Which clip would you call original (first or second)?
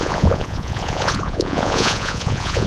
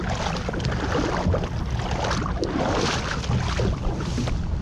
second